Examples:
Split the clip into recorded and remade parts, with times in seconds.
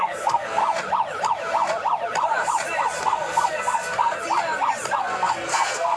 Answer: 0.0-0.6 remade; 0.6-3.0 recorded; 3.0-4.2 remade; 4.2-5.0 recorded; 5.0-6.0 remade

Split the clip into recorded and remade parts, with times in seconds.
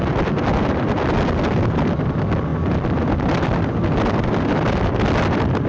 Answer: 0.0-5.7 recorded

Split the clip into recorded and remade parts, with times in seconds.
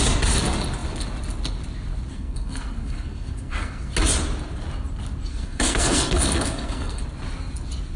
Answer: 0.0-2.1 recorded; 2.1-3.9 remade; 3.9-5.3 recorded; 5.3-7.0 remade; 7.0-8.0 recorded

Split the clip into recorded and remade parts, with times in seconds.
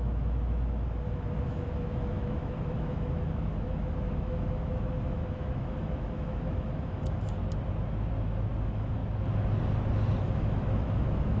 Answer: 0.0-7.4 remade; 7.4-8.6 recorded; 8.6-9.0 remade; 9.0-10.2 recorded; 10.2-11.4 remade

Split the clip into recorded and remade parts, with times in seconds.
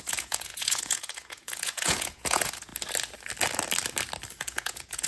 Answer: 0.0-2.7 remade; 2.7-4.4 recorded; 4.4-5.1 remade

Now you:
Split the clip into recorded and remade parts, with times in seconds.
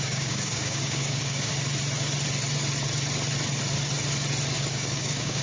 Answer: 0.0-1.5 remade; 1.5-4.7 recorded; 4.7-5.4 remade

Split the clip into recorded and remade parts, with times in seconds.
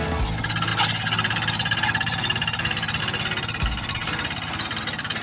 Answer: 0.0-5.2 recorded